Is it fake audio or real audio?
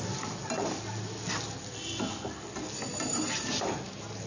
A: real